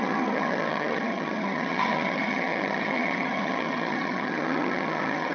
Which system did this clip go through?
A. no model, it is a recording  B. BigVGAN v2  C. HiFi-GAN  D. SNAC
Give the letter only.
C